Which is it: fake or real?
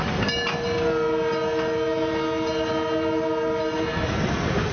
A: real